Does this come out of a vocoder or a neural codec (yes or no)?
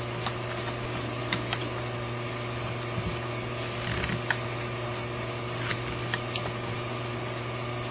no